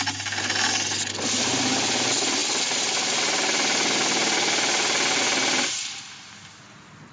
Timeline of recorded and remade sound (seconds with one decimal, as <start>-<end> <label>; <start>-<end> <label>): 0.0-7.1 recorded